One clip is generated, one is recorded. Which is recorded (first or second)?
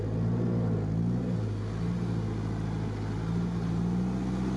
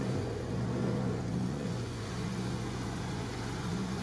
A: first